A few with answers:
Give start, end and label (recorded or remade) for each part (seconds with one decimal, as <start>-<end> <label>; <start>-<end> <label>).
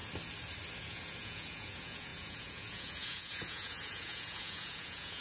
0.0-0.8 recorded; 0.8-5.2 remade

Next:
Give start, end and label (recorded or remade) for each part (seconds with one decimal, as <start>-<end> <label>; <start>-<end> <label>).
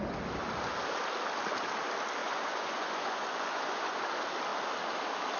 0.0-2.2 recorded; 2.2-4.0 remade; 4.0-5.4 recorded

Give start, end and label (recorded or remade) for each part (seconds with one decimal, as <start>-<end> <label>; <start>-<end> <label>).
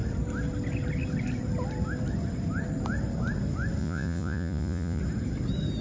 0.0-3.8 recorded; 3.8-5.0 remade; 5.0-5.8 recorded